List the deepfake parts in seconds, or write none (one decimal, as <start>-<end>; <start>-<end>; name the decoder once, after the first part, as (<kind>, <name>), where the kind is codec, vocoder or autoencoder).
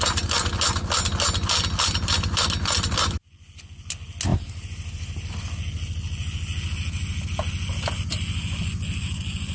4.3-5.3 (vocoder, BigVGAN v2)